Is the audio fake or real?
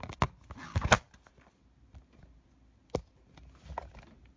real